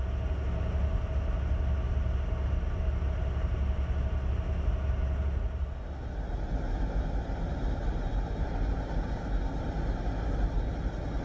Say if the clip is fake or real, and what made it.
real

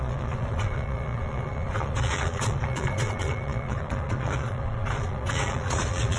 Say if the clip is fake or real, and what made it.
fake, vocoder, Vocos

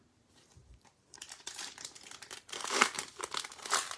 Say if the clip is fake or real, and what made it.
fake, vocoder, BigVGAN v2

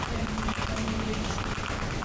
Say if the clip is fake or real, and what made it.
real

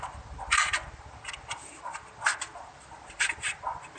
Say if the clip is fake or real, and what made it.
real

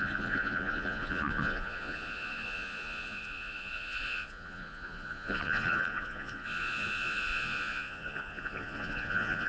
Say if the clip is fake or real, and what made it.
fake, vocoder, Vocos